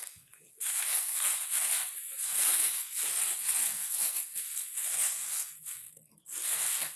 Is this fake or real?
fake